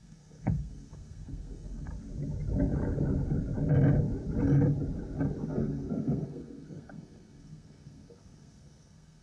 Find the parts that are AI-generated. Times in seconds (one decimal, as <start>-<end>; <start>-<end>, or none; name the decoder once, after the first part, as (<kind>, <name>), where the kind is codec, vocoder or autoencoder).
0.0-1.9 (codec, SNAC); 5.5-9.2